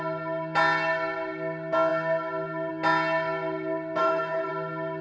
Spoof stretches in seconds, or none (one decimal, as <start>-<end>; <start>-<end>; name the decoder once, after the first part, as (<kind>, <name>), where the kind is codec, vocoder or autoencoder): 4.0-4.5 (codec, SNAC)